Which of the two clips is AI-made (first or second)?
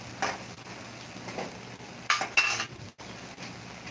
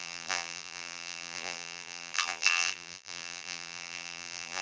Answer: second